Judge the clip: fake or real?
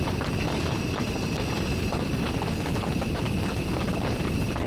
real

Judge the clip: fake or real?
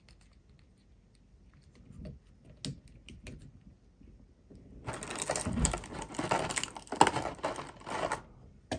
real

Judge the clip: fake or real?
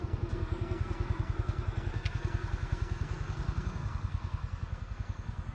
fake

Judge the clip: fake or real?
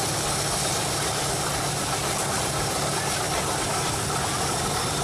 real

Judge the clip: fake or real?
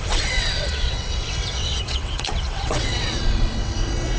fake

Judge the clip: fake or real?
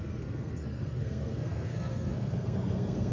fake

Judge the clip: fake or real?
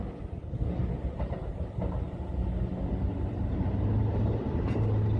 real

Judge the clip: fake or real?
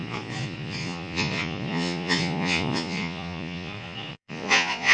fake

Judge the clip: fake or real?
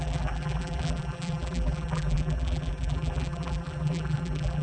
fake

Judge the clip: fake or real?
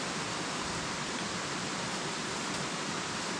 real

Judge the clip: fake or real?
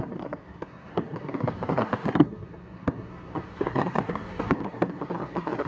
fake